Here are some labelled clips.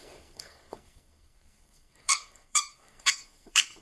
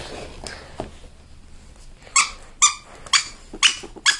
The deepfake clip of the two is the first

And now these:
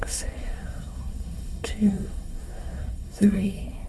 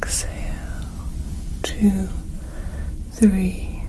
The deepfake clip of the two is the first